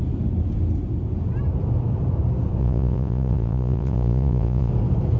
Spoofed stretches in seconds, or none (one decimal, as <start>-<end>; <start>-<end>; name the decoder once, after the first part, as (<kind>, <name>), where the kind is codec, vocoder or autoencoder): 2.6-4.7 (vocoder, Vocos)